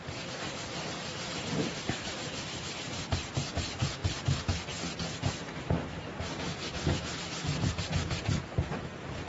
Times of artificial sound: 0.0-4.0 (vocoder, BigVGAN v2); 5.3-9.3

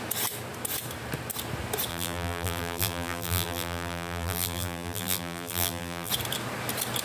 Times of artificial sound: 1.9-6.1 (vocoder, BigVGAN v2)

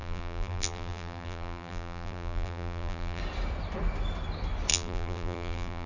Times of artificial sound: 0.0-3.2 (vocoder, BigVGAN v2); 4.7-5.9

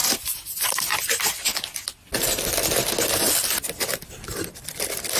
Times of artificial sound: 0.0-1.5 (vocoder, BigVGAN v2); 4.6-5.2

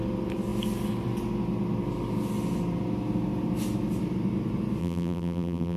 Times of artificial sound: 4.8-5.8 (vocoder, BigVGAN v2)